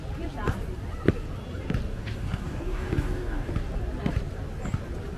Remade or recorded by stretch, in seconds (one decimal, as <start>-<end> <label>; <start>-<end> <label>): 0.0-1.9 recorded; 1.9-3.5 remade; 3.5-5.2 recorded